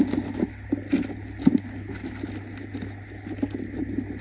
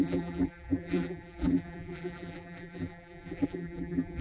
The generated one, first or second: second